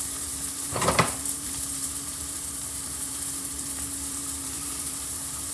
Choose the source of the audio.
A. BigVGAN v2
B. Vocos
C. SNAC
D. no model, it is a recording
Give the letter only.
A